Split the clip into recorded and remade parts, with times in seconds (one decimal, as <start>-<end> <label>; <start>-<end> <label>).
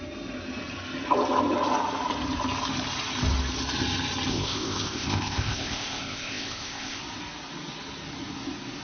0.0-4.3 recorded; 4.3-7.0 remade; 7.0-8.8 recorded